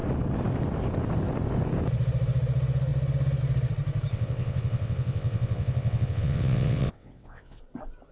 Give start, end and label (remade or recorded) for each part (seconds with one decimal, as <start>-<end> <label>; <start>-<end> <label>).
0.0-4.1 recorded; 4.1-7.6 remade; 7.6-8.1 recorded